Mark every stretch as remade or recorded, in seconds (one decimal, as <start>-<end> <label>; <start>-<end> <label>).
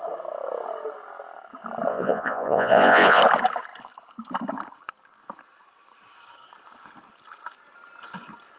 0.0-1.9 recorded; 1.9-3.2 remade; 3.2-8.6 recorded